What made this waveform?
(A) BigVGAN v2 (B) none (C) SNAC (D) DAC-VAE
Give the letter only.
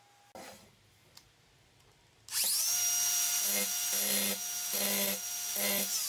B